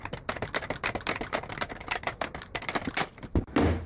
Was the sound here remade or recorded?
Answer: recorded